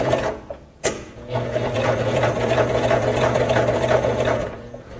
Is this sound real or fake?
fake